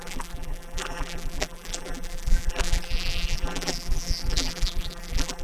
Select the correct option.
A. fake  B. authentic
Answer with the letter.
A